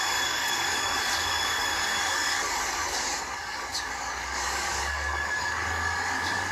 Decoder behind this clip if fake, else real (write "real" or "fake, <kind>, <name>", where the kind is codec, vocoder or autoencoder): fake, codec, DAC